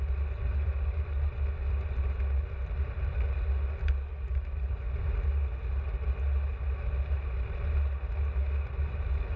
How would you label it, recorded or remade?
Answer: recorded